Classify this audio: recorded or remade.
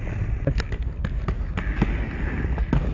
remade